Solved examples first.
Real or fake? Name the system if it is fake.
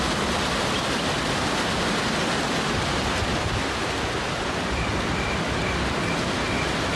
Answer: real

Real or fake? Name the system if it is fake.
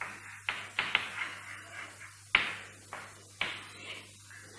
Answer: real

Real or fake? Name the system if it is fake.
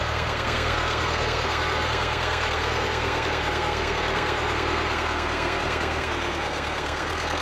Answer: fake, codec, SNAC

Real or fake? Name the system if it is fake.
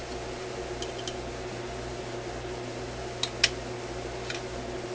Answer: real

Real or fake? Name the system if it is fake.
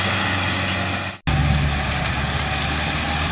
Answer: real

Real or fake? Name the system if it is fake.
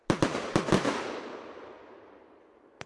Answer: real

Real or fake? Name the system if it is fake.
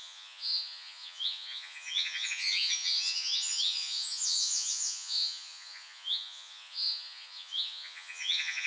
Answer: fake, vocoder, Vocos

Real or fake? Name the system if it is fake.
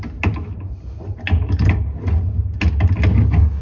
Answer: real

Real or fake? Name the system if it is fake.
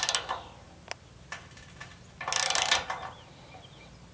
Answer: real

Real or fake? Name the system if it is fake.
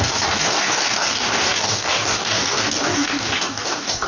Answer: fake, codec, DAC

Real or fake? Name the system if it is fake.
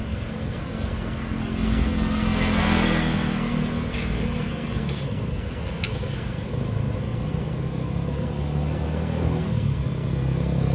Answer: fake, codec, SNAC